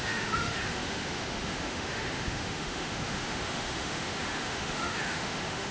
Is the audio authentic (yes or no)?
no